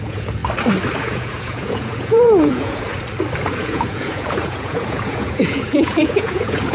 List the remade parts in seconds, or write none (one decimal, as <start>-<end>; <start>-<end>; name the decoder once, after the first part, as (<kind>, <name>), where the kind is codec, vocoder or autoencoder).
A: 0.0-0.4 (vocoder, Vocos); 1.0-2.9; 3.5-6.7